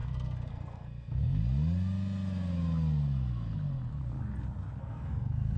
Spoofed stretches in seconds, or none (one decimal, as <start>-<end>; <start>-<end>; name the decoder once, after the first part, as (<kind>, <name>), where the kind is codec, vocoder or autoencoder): 0.0-1.4 (codec, SNAC); 4.8-5.6